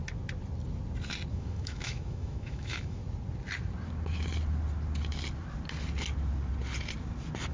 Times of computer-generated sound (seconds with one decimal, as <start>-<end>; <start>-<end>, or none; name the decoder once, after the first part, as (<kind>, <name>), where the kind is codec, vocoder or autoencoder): 1.3-3.0 (autoencoder, DAC-VAE)